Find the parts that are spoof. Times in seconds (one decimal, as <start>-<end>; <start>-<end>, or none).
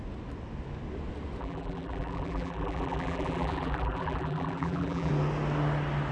1.4-5.1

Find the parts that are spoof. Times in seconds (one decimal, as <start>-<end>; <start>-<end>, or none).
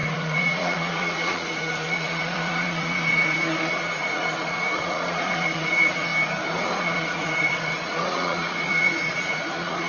0.0-6.1; 6.8-9.9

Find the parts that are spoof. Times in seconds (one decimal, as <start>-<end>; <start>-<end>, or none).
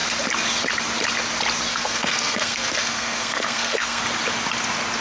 1.7-4.0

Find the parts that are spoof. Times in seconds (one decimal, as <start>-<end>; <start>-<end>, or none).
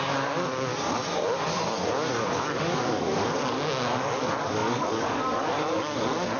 0.0-0.7; 2.4-6.4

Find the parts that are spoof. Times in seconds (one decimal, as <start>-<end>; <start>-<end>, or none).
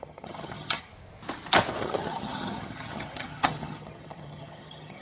0.0-0.9; 1.8-5.0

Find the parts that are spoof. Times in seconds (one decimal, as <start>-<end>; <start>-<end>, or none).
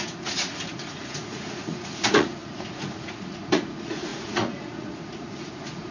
0.0-5.9